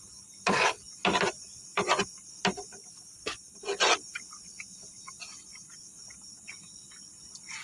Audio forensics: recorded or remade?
recorded